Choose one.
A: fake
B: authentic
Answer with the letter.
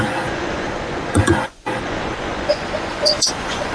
A